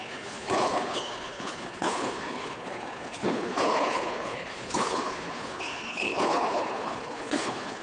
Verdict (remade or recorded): remade